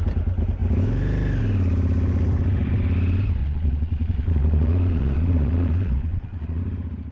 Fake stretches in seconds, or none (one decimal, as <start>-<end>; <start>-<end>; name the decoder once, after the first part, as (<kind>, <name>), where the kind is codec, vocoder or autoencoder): 3.4-6.6 (vocoder, Vocos)